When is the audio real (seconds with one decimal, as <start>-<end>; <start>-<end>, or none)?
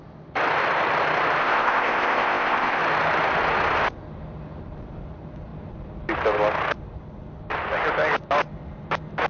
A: 0.0-1.4; 2.8-9.3